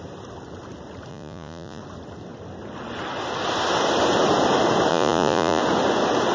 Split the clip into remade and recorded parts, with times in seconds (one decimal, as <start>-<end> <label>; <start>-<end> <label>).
0.0-1.1 recorded; 1.1-1.8 remade; 1.8-4.9 recorded; 4.9-5.6 remade; 5.6-6.3 recorded